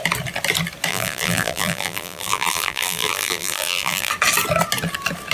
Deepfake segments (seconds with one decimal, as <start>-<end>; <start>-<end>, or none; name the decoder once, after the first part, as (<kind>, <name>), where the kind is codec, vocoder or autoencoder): 0.9-4.1 (vocoder, BigVGAN v2)